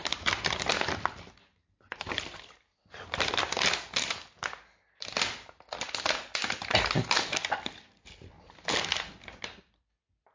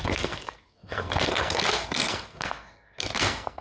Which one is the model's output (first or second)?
second